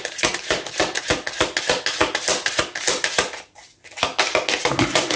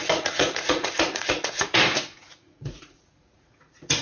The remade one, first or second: second